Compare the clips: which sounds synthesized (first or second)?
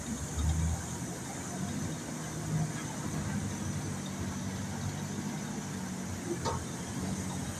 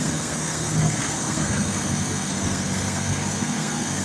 second